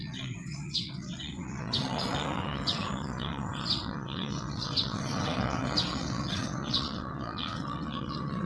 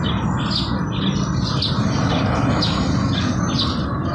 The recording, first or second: second